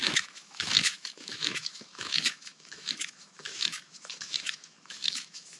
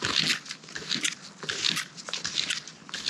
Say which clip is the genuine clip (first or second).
second